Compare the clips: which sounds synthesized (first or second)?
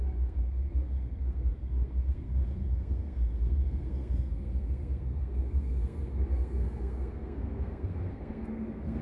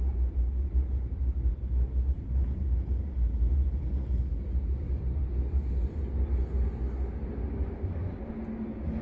first